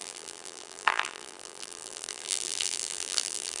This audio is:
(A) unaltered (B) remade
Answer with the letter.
B